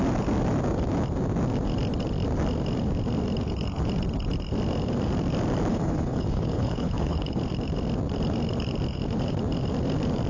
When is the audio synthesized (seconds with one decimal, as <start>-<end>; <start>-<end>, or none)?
5.7-7.4

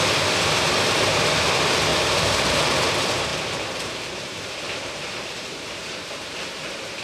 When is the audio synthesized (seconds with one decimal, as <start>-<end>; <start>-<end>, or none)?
1.9-2.5; 3.3-6.0

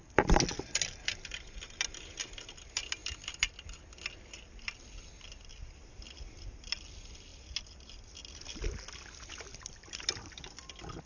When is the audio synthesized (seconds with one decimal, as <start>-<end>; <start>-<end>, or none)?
none